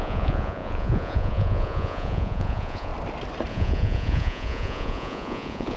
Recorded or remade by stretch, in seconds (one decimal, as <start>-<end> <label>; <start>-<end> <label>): 0.0-2.9 remade; 2.9-3.5 recorded; 3.5-5.8 remade

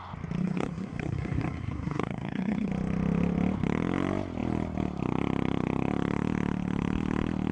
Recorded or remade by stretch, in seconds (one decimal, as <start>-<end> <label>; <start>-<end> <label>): 0.0-0.4 recorded; 0.4-2.7 remade; 2.7-7.5 recorded

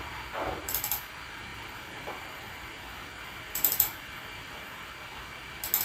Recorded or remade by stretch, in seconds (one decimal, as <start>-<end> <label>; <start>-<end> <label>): 0.0-0.6 recorded; 0.6-1.1 remade; 1.1-1.5 recorded; 1.5-4.9 remade; 4.9-5.8 recorded

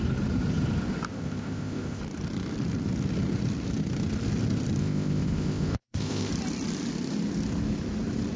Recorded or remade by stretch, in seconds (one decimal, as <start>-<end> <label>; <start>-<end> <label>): 0.0-1.1 recorded; 1.1-2.0 remade; 2.0-4.8 recorded; 4.8-6.3 remade; 6.3-8.4 recorded